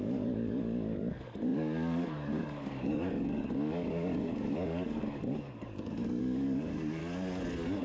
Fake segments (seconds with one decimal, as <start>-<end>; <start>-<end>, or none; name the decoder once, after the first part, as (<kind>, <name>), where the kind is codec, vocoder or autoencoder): 0.0-7.0 (codec, DAC)